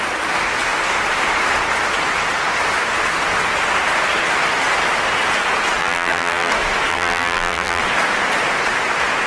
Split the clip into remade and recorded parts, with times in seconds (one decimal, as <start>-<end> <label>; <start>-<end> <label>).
0.0-5.8 recorded; 5.8-6.5 remade; 6.5-6.9 recorded; 6.9-7.8 remade; 7.8-9.3 recorded